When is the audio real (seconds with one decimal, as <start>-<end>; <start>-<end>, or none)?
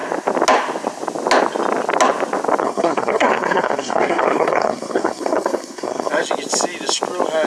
0.0-2.6; 6.1-7.5